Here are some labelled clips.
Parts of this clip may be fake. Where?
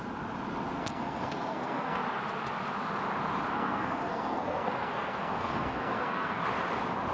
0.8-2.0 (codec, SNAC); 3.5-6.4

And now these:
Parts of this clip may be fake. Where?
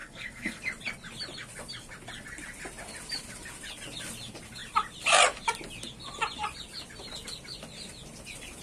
0.0-0.6 (codec, SNAC)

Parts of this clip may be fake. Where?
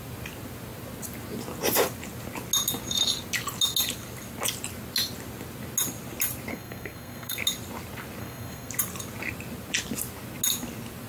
6.5-7.4 (codec, SNAC); 8.2-8.7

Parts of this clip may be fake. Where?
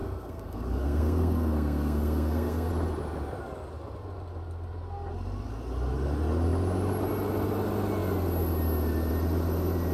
0.0-2.7 (codec, SNAC)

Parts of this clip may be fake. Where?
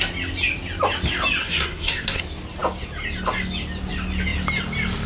1.4-2.2 (codec, SNAC)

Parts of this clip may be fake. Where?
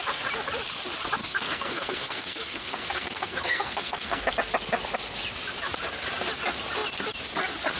1.2-4.3 (codec, SNAC)